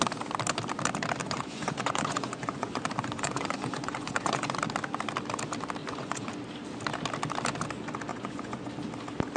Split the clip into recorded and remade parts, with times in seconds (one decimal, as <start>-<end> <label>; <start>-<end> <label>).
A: 0.0-1.2 recorded; 1.2-4.6 remade; 4.6-5.8 recorded; 5.8-6.3 remade; 6.3-8.1 recorded; 8.1-8.7 remade; 8.7-9.4 recorded